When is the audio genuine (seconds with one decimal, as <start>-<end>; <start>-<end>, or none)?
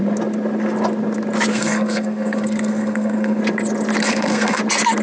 0.0-1.5; 3.4-4.0; 4.6-5.0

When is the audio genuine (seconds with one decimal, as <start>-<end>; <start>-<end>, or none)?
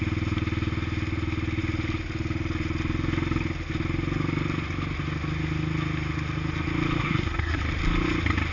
0.0-7.0; 7.6-8.5